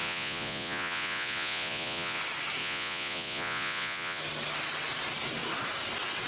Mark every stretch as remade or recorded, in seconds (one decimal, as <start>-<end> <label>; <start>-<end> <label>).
0.0-2.2 remade; 2.2-2.6 recorded; 2.6-4.2 remade; 4.2-6.3 recorded